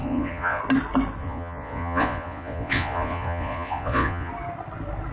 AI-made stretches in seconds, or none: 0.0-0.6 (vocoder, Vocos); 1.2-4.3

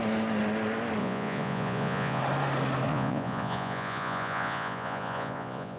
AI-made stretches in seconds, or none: 1.0-2.2 (vocoder, Vocos); 2.9-5.8

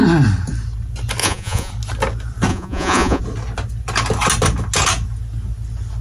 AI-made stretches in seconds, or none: 1.2-1.7 (vocoder, Vocos); 2.5-3.2

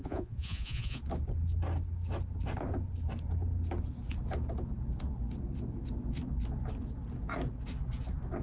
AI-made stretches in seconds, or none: 0.0-1.0 (vocoder, Vocos)

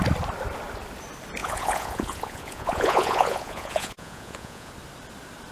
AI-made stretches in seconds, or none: 1.4-4.7 (vocoder, Vocos)

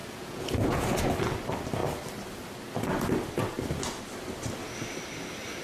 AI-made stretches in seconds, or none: 0.0-1.1 (vocoder, Vocos)